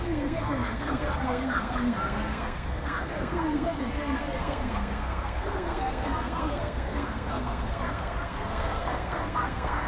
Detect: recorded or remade remade